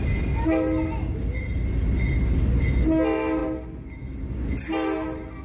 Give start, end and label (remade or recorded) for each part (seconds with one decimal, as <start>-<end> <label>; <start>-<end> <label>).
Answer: 0.0-5.4 recorded